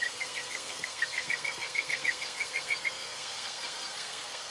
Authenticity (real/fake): fake